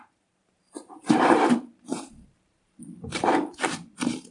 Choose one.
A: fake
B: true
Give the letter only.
A